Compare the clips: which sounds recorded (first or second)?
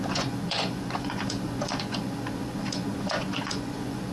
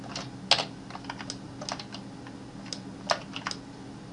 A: second